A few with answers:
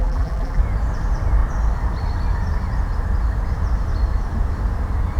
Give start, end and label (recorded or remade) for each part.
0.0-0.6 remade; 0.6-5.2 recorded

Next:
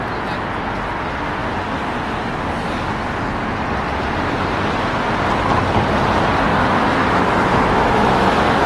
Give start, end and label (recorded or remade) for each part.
0.0-6.5 recorded; 6.5-8.7 remade